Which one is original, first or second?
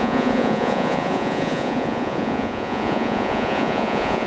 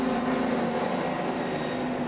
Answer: second